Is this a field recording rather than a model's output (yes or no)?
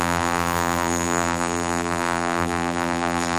no